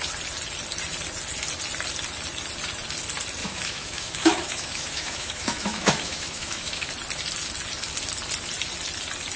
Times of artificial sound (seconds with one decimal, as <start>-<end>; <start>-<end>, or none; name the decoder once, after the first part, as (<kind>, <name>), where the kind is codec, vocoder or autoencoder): 3.4-6.9 (autoencoder, DAC-VAE)